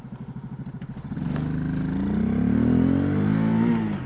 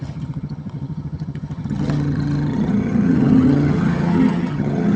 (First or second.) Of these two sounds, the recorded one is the first